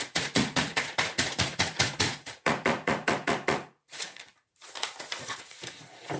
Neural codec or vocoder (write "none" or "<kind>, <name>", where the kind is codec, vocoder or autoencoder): vocoder, Vocos